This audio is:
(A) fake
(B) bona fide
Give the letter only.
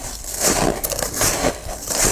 B